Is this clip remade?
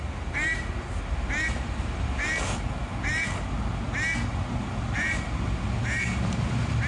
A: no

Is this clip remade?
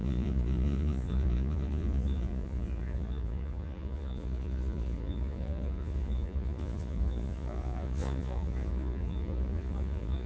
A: yes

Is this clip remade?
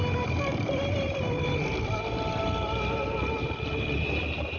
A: yes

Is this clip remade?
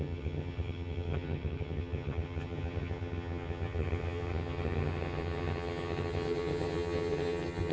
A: yes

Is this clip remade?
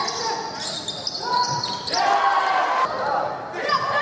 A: no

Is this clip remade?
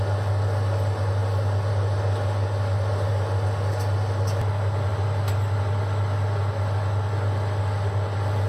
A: no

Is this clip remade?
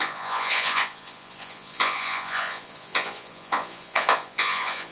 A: yes